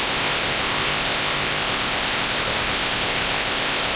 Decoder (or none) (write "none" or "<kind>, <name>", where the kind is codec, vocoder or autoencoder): codec, ZipCodec